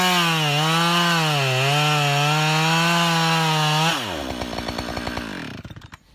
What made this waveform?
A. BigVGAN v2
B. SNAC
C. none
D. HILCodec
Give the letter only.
C